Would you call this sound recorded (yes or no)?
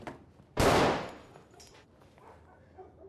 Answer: yes